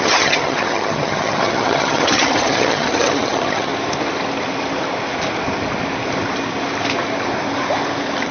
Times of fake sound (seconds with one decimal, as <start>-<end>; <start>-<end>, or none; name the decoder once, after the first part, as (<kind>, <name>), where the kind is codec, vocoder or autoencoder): 0.0-3.7 (vocoder, HiFi-GAN)